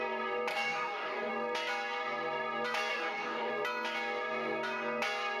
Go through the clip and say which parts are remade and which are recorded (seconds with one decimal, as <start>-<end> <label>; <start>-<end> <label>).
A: 0.0-0.5 recorded; 0.5-1.3 remade; 1.3-2.9 recorded; 2.9-3.5 remade; 3.5-5.4 recorded